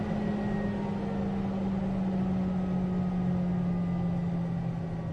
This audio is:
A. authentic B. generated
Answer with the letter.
A